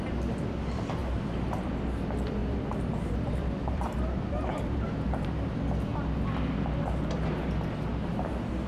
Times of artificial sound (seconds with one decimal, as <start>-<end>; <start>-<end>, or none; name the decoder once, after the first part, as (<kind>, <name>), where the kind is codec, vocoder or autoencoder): 1.0-1.7 (vocoder, BigVGAN v2); 2.4-5.5

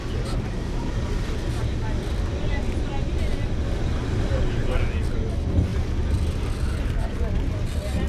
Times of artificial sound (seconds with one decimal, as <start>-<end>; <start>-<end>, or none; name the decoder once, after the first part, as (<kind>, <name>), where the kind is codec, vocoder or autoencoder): none

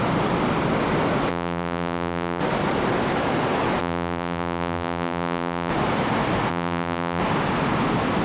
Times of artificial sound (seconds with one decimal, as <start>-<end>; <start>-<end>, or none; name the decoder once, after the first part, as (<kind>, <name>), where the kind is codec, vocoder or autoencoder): 1.3-2.4 (vocoder, BigVGAN v2); 3.8-5.7; 6.5-7.2

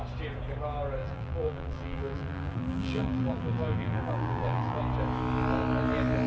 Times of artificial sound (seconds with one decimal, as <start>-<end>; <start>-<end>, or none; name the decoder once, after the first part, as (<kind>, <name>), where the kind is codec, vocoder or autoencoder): 1.0-4.8 (vocoder, BigVGAN v2)

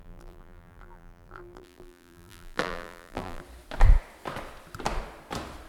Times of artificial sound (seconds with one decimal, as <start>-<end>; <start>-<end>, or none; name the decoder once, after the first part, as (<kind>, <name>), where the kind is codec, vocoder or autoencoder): 0.0-3.4 (vocoder, BigVGAN v2)

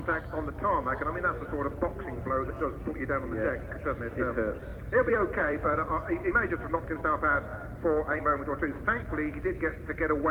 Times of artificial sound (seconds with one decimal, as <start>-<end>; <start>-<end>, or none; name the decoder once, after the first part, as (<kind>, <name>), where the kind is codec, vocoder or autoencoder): 4.7-6.3 (vocoder, BigVGAN v2); 7.5-8.2

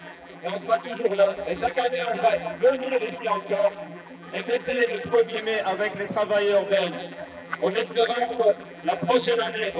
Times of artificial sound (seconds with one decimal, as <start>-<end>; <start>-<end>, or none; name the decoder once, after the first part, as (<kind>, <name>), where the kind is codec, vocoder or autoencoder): 0.0-5.4 (vocoder, BigVGAN v2); 6.7-9.8